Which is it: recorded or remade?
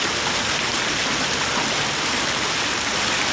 recorded